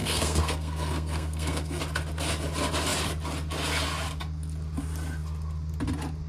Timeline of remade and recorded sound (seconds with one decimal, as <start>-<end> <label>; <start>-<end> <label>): 0.0-1.8 remade; 1.8-6.3 recorded